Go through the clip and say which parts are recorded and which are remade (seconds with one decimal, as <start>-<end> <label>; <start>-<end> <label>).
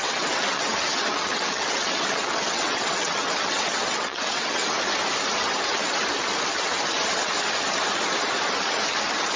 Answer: 0.0-4.6 remade; 4.6-9.4 recorded